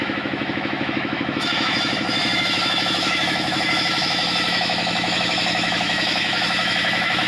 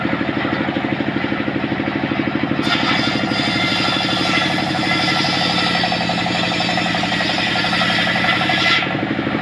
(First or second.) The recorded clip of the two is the second